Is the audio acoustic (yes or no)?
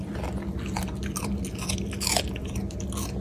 yes